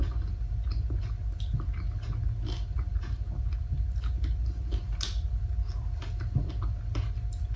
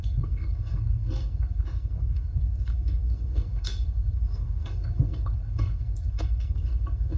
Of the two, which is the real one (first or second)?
first